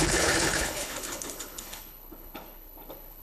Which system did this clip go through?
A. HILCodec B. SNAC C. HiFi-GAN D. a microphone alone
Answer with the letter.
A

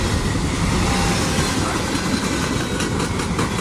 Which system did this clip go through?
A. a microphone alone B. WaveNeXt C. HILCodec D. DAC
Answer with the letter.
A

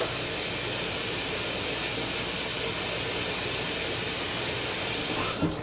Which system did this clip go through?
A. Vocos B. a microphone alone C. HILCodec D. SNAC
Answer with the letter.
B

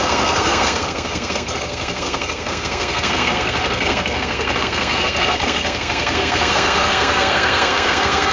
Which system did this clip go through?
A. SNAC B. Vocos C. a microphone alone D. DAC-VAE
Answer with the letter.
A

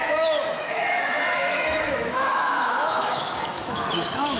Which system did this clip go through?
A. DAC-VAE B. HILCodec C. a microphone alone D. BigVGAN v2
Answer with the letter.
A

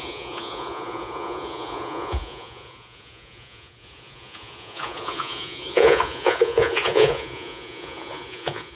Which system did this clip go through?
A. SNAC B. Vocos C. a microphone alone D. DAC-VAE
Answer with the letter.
B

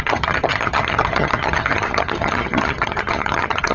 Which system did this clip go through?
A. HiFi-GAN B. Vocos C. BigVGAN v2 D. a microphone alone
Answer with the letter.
A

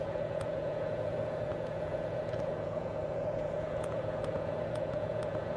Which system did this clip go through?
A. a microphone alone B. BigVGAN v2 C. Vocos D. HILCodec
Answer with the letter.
C